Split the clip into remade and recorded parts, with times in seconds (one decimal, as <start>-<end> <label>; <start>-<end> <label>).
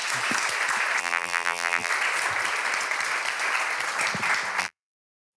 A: 0.0-1.0 recorded; 1.0-1.9 remade; 1.9-4.6 recorded; 4.6-5.4 remade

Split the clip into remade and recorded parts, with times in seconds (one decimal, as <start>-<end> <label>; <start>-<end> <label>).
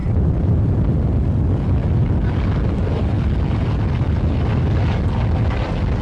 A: 0.0-0.6 remade; 0.6-6.0 recorded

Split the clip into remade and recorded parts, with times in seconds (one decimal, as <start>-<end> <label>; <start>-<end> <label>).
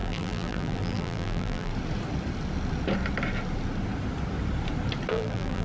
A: 0.0-1.7 remade; 1.7-5.1 recorded; 5.1-5.6 remade